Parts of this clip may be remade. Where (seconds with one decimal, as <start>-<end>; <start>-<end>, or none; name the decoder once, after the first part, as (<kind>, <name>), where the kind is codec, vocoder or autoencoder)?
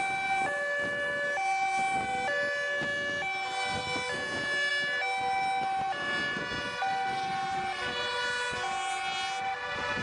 none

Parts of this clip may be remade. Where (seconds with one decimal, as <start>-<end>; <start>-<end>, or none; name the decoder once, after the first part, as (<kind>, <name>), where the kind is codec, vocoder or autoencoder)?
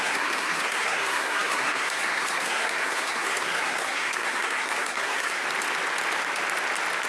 0.0-5.4 (codec, SNAC)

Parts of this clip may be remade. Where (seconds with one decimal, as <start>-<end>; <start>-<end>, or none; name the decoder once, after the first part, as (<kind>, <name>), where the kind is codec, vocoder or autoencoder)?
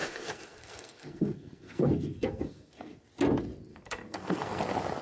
0.0-3.0 (codec, SNAC); 3.7-4.6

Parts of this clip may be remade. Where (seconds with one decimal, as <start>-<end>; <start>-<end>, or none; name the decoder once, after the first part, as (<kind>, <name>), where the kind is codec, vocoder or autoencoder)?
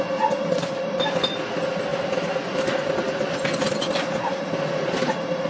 none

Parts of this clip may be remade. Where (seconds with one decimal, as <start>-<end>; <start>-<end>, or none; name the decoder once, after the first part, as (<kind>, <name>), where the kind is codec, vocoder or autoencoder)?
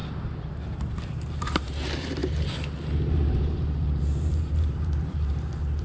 0.9-5.8 (vocoder, BigVGAN v2)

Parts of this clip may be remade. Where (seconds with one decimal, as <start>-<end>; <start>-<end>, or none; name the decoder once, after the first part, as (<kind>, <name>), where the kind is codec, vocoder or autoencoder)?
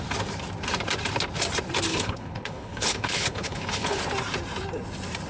1.9-4.0 (codec, HILCodec)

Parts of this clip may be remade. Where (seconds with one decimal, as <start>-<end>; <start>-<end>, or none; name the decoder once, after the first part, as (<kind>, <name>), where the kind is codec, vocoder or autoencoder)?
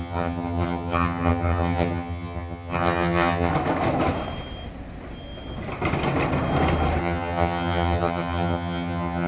0.0-3.5 (vocoder, HiFi-GAN); 7.0-9.3